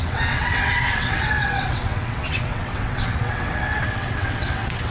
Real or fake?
fake